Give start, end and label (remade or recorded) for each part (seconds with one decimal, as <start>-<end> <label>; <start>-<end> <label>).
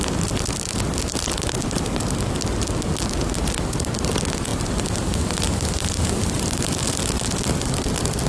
0.0-8.3 recorded